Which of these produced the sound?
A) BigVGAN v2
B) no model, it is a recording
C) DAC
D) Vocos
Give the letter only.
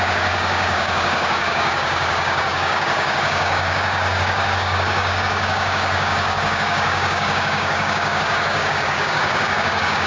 C